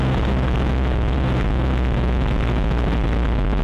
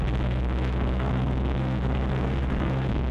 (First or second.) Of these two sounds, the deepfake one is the second